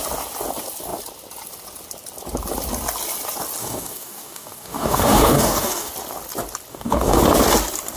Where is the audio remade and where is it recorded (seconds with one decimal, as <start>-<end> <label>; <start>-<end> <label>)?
0.0-3.6 recorded; 3.6-5.9 remade; 5.9-6.7 recorded; 6.7-7.2 remade; 7.2-8.0 recorded